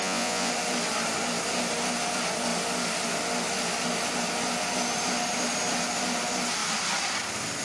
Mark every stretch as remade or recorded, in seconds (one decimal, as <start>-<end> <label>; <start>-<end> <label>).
0.0-0.5 remade; 0.5-7.6 recorded